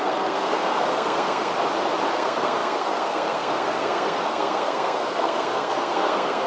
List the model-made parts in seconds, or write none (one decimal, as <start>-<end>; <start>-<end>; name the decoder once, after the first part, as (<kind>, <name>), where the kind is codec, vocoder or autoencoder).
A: 0.0-1.5 (codec, SNAC); 2.1-6.5